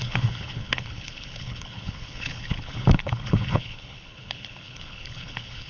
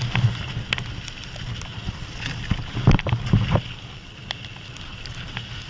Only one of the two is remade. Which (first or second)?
first